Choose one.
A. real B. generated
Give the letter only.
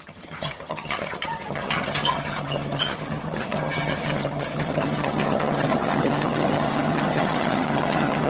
B